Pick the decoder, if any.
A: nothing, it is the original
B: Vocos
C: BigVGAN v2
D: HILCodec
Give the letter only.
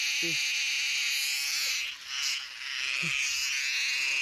A